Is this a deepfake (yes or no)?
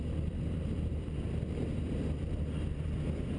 yes